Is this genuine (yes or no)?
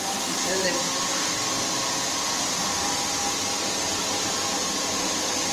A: yes